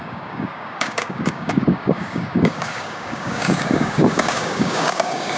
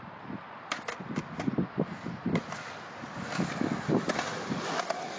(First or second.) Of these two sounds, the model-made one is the first